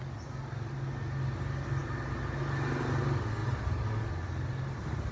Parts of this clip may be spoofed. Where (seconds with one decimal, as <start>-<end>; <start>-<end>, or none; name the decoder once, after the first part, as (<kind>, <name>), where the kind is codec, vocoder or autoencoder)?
none